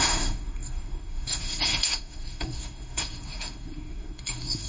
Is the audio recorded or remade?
remade